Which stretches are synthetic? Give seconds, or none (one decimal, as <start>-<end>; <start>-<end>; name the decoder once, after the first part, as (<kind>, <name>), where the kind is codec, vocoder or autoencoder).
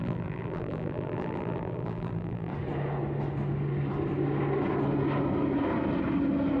0.0-2.5 (vocoder, BigVGAN v2)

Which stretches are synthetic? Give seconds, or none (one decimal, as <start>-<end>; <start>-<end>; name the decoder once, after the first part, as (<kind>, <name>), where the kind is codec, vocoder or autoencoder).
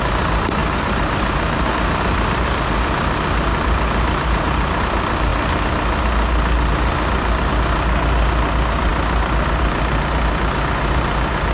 0.6-1.7 (vocoder, BigVGAN v2); 3.5-4.8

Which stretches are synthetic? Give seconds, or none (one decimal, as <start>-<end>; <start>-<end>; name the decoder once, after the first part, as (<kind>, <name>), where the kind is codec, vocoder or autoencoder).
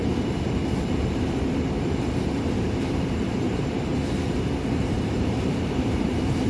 0.0-3.9 (vocoder, BigVGAN v2); 4.8-6.5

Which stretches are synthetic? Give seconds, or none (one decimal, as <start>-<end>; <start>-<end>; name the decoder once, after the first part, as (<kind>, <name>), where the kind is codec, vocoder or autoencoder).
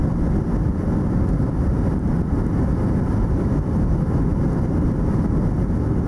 0.0-3.7 (vocoder, BigVGAN v2); 4.3-4.9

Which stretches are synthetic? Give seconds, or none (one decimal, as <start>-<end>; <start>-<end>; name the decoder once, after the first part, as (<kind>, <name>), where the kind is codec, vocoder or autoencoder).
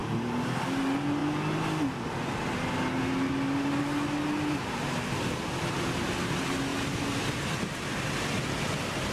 0.0-0.6 (vocoder, BigVGAN v2)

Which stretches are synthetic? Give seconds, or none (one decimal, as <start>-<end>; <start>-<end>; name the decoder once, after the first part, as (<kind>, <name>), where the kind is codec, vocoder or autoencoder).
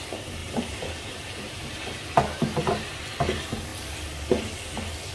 0.4-3.0 (vocoder, BigVGAN v2)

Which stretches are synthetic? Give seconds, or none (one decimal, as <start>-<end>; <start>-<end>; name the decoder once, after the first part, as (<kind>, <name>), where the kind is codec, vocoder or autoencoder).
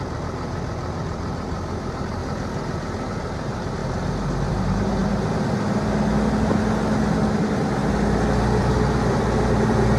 0.0-2.2 (vocoder, BigVGAN v2); 3.1-3.8; 4.5-5.0; 7.2-7.8; 8.6-10.0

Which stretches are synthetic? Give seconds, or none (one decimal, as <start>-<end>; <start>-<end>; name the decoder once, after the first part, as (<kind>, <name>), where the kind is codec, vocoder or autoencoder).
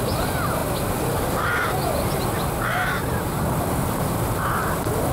none